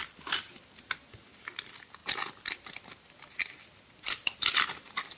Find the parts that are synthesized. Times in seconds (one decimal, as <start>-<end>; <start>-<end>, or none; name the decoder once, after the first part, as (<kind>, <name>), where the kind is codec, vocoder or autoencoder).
none